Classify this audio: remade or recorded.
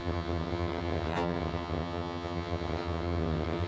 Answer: remade